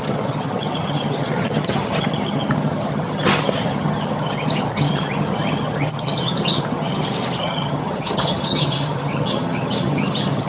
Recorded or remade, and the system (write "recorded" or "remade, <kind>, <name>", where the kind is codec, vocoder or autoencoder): remade, vocoder, HiFi-GAN